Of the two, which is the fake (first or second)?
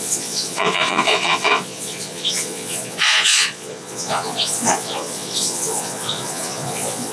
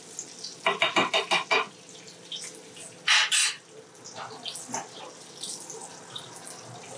first